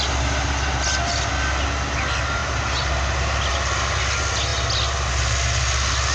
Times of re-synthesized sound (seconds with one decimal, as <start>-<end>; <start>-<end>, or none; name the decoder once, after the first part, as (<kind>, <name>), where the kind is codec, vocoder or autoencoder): none